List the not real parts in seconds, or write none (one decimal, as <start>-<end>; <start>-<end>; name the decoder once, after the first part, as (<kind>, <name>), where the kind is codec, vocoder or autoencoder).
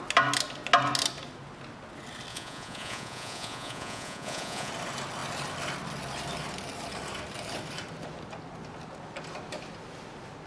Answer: 2.3-4.7 (vocoder, Vocos)